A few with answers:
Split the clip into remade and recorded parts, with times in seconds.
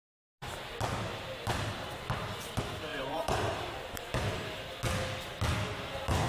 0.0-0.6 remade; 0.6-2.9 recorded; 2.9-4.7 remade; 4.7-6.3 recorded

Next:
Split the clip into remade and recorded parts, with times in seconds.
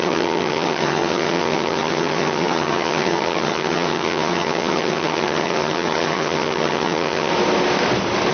0.0-7.3 remade; 7.3-8.3 recorded